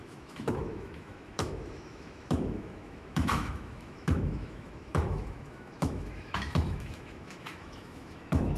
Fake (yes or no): yes